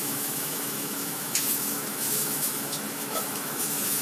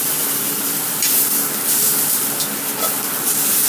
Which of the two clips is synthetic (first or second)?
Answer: first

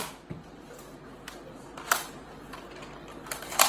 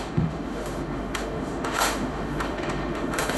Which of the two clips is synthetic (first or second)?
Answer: second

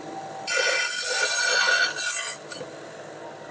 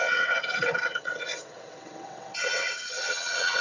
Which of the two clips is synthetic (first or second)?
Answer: second